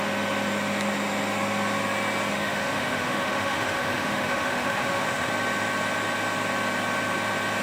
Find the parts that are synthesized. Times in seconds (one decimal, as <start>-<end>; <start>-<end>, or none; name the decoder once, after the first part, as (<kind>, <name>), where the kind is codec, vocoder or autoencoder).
2.3-5.3 (autoencoder, DAC-VAE)